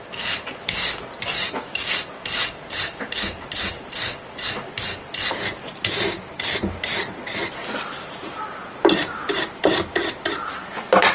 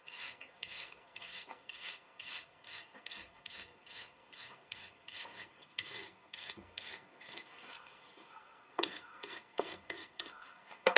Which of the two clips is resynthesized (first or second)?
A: second